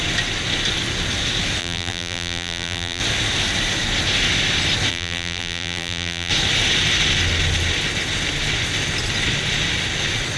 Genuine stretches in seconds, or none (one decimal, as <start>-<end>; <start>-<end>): 0.0-1.6; 3.0-4.9; 6.3-10.4